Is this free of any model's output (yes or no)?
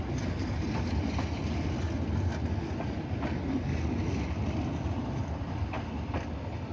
yes